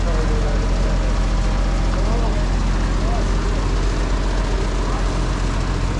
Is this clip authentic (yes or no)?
yes